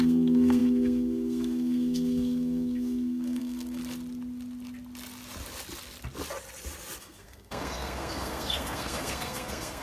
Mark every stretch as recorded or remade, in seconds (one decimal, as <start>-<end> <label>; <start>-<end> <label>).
0.0-3.8 remade; 3.8-7.0 recorded; 7.0-9.8 remade